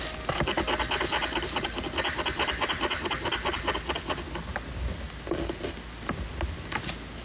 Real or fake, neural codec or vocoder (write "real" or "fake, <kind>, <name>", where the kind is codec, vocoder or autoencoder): real